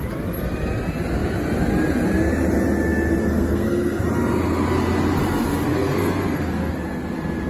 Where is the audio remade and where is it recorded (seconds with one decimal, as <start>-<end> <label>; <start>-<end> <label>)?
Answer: 0.0-3.2 recorded; 3.2-4.0 remade; 4.0-5.7 recorded; 5.7-6.7 remade; 6.7-7.5 recorded